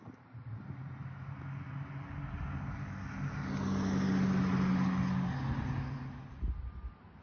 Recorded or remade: recorded